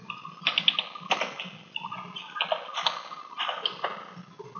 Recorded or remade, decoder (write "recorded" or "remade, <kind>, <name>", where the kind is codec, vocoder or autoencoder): recorded